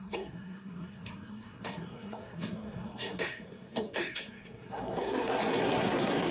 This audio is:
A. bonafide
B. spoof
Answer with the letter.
B